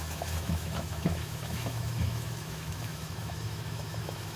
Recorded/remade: remade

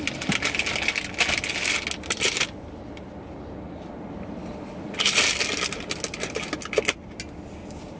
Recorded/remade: recorded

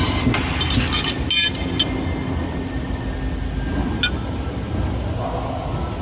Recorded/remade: recorded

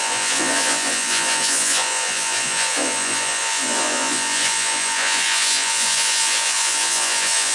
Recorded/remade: remade